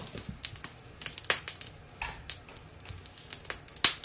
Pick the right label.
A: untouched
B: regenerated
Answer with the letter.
A